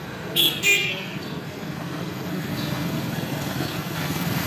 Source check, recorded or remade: remade